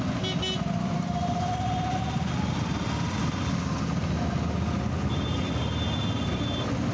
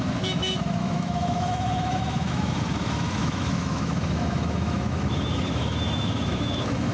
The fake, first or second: second